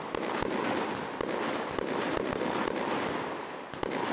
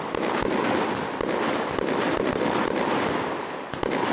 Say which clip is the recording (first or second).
first